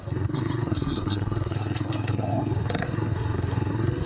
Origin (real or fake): fake